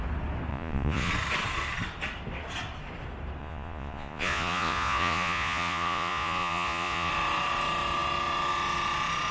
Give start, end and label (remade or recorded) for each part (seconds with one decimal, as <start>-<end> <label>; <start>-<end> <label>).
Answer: 0.0-0.5 recorded; 0.5-1.1 remade; 1.1-3.4 recorded; 3.4-7.1 remade; 7.1-9.3 recorded